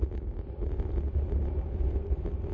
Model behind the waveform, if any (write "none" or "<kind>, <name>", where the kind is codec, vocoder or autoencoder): none